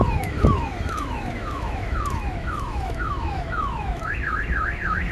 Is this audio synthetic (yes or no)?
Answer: yes